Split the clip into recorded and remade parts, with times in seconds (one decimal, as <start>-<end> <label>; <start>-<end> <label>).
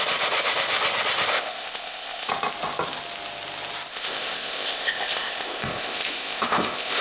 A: 0.0-1.3 recorded; 1.3-2.3 remade; 2.3-3.9 recorded; 3.9-7.0 remade